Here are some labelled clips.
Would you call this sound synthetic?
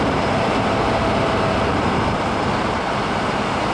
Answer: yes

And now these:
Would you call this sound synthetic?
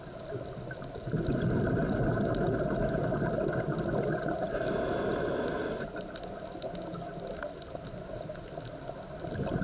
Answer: no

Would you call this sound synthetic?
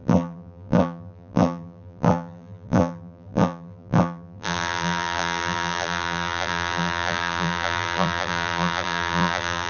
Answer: yes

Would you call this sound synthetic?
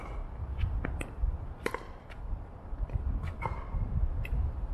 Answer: yes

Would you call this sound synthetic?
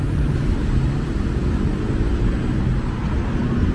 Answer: no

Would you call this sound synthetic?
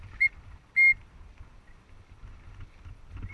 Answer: no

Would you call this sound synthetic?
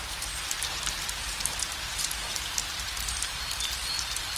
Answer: yes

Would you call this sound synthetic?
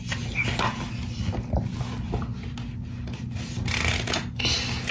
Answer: no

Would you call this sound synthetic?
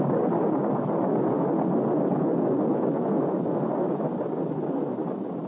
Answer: no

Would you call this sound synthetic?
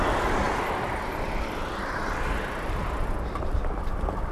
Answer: yes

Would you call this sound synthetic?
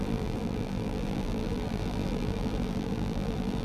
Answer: yes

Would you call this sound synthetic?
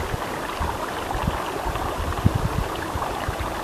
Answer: no